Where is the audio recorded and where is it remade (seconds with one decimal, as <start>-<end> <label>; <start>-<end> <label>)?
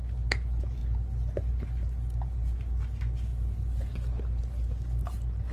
0.0-5.5 recorded